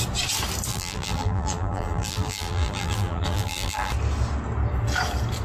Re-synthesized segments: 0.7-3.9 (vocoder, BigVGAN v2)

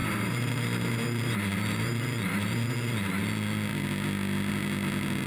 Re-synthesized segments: 0.0-3.2 (vocoder, BigVGAN v2)

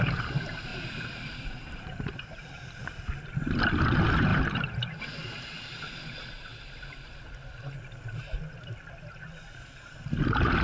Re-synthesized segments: 0.7-3.5 (vocoder, BigVGAN v2); 4.3-5.0

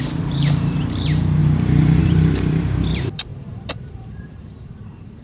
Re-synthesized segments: 0.0-5.2 (vocoder, BigVGAN v2)

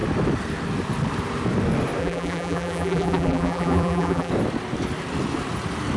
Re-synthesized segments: 2.0-4.3 (vocoder, BigVGAN v2)

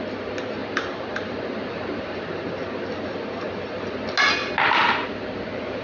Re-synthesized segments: 0.6-2.4 (vocoder, BigVGAN v2); 4.4-5.1

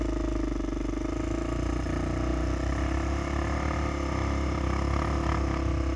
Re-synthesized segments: none

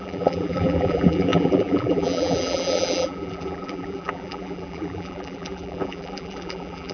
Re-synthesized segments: 0.0-6.9 (vocoder, BigVGAN v2)